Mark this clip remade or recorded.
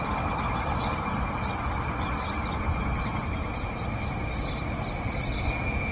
recorded